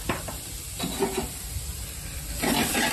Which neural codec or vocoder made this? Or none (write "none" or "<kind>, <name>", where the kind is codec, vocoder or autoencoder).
vocoder, BigVGAN v2